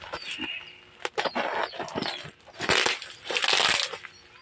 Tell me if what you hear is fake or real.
real